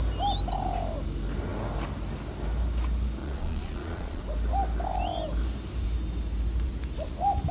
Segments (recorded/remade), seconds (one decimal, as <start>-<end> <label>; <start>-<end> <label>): 0.0-3.2 recorded; 3.2-4.2 remade; 4.2-7.5 recorded